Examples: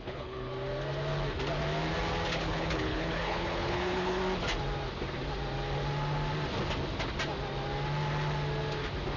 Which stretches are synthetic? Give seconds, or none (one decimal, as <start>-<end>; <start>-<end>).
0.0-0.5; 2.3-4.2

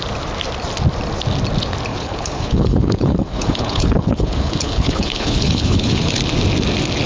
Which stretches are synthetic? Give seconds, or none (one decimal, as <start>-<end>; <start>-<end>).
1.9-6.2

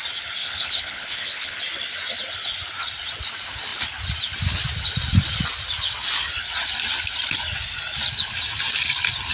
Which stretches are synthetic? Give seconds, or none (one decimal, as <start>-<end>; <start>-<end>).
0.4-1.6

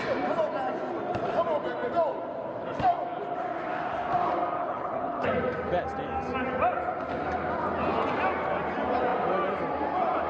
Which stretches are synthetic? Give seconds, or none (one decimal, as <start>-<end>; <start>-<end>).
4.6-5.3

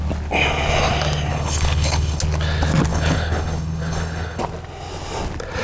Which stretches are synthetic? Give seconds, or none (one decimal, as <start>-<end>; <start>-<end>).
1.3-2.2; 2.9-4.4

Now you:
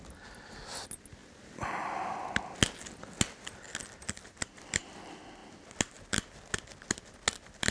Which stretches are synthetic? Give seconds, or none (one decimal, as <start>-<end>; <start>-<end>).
none